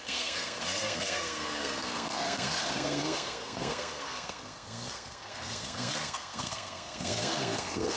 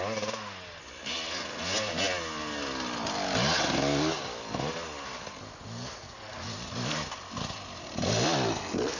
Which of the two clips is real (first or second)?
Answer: second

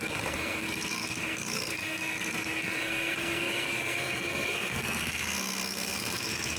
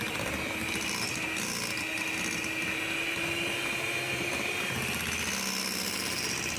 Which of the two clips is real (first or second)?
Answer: second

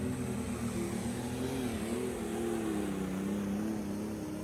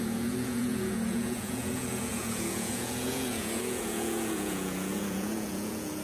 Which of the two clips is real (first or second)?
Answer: first